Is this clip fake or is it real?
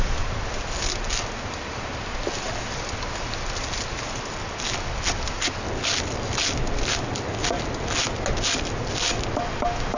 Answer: real